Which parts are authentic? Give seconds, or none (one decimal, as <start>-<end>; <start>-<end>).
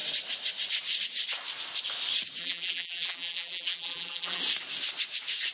0.0-2.4; 4.4-5.5